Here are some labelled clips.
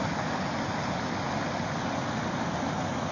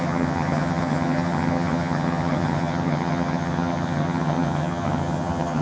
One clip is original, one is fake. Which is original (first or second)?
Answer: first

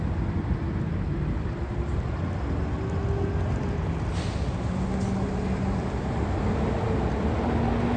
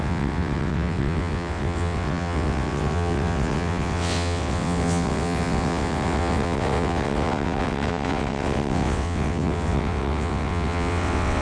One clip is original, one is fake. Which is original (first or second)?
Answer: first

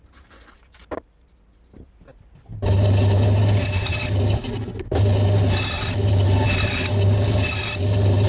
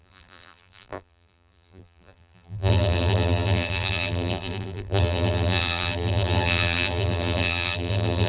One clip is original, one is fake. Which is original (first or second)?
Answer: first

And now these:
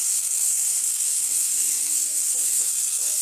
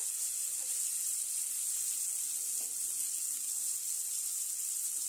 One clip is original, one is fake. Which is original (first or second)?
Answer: second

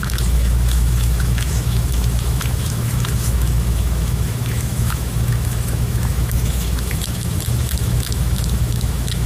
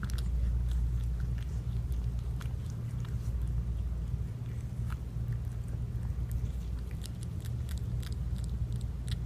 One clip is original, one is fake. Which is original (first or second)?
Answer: second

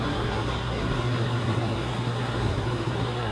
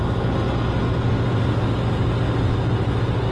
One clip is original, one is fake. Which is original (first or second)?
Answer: second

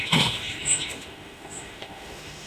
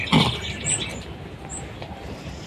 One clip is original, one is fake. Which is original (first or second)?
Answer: second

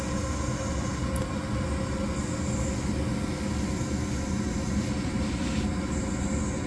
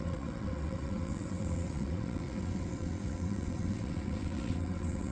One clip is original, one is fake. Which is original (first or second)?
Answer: first